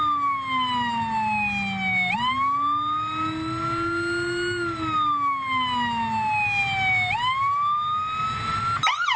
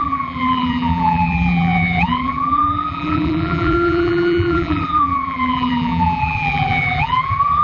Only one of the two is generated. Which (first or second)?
second